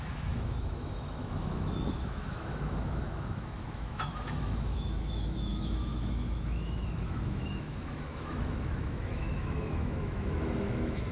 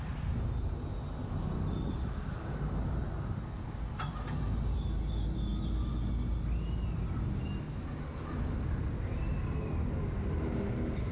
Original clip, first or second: second